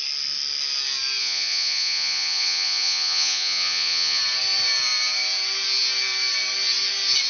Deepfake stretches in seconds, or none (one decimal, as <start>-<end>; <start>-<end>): 1.2-4.2